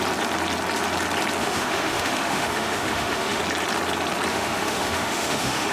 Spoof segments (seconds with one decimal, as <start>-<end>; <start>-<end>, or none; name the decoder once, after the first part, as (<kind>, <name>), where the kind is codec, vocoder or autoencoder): 1.4-3.4 (autoencoder, DAC-VAE); 4.3-5.7

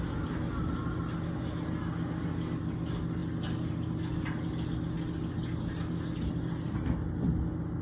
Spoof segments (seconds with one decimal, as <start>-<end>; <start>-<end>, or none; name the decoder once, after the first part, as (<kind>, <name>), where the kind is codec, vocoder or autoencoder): none

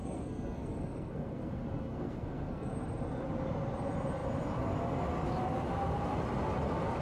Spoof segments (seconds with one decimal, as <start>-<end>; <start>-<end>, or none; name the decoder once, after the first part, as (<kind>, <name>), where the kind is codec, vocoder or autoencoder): 0.0-2.7 (codec, SNAC)

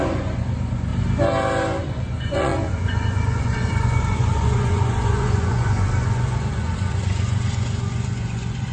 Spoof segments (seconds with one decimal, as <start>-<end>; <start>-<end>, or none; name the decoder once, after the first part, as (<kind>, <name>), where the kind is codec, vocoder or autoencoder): 0.0-0.9 (vocoder, Vocos); 1.8-8.7